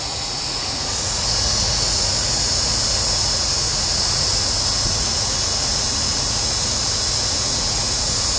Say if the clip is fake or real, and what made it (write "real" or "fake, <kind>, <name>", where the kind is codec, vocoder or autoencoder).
fake, vocoder, Vocos